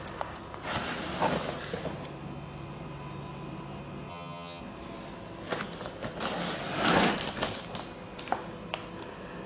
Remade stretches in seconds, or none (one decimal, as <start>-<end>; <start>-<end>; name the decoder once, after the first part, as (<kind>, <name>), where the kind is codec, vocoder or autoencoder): 4.1-4.6 (vocoder, HiFi-GAN)

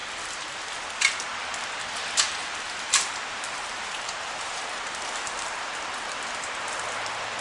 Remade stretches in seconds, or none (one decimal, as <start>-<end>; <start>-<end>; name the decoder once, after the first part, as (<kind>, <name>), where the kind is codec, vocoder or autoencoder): 2.4-5.5 (vocoder, BigVGAN v2)

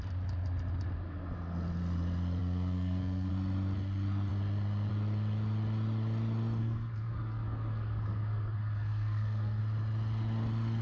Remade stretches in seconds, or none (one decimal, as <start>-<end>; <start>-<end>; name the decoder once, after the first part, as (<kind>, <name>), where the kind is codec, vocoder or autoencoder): 2.4-3.3 (codec, SNAC); 6.6-9.6

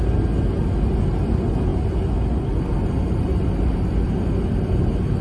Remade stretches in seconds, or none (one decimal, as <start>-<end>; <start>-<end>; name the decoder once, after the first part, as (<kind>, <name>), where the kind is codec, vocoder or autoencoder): none

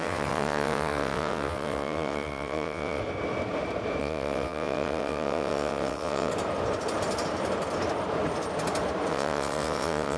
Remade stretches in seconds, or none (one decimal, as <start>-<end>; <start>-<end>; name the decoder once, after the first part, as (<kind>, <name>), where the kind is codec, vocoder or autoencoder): 0.0-3.0 (vocoder, WaveNeXt); 4.0-6.3; 9.1-10.2

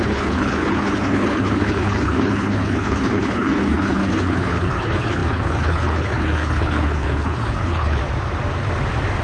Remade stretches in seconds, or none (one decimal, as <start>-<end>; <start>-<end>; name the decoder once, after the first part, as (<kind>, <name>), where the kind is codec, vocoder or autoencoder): 0.0-8.0 (codec, HILCodec)